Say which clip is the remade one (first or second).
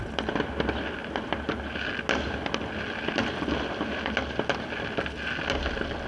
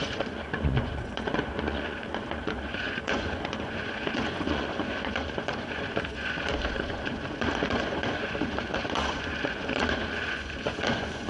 second